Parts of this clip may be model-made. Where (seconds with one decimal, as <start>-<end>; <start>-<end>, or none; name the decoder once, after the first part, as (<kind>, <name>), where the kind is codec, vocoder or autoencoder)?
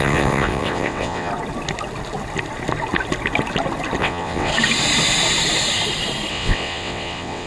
0.0-1.3 (vocoder, WaveNeXt); 4.0-4.5; 6.3-7.5